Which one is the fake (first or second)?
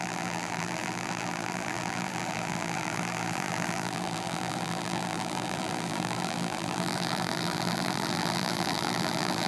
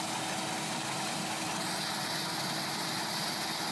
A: first